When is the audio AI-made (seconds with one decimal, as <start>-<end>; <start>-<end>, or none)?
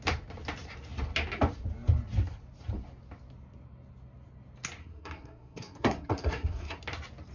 4.8-6.8